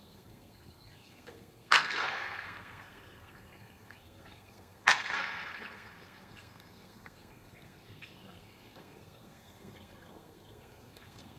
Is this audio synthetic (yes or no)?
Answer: yes